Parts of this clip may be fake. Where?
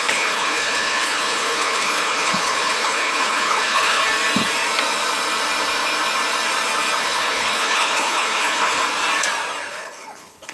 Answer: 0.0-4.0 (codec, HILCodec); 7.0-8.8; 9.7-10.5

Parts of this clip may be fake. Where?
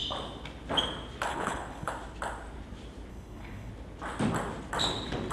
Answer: 1.3-1.9 (codec, HILCodec); 3.1-3.7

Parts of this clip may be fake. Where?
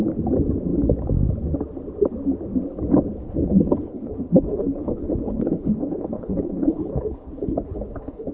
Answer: 3.2-8.3 (codec, HILCodec)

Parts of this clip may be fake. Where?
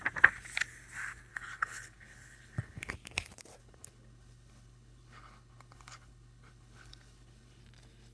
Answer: 1.3-2.9 (codec, HILCodec); 3.6-7.6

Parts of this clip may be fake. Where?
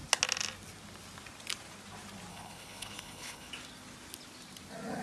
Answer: 2.3-3.5 (codec, HILCodec)